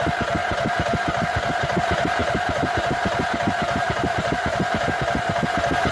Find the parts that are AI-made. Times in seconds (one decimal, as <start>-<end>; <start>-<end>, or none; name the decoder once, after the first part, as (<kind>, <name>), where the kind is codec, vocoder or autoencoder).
0.4-1.5 (vocoder, BigVGAN v2); 2.2-5.0